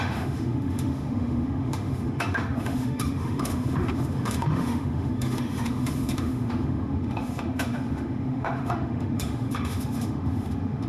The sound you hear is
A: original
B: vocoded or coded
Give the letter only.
B